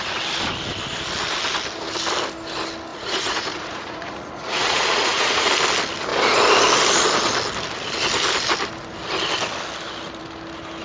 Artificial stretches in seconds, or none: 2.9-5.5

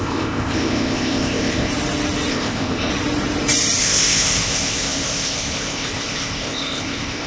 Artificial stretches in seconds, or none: 0.0-1.7; 2.3-2.9; 3.8-7.3

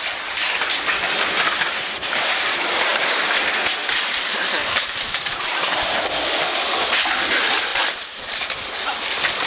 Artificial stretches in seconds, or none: 2.9-3.4; 3.8-5.9; 7.7-8.4

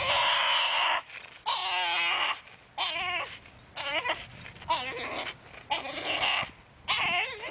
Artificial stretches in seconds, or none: none